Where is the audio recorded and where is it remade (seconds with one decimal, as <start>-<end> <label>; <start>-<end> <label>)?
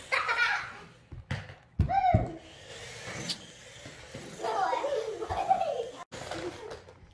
0.0-7.1 recorded